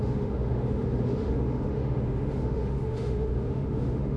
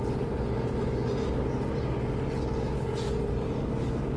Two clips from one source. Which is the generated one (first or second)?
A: first